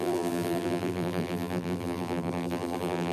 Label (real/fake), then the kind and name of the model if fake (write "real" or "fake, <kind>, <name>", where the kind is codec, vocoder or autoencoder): fake, vocoder, BigVGAN v2